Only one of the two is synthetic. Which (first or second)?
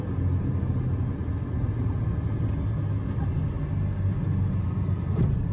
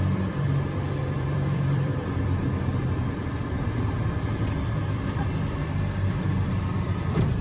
second